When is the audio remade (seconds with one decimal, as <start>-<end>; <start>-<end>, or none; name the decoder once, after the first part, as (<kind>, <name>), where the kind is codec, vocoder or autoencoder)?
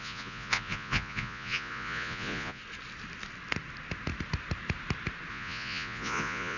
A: 0.0-2.6 (vocoder, Vocos); 5.3-6.6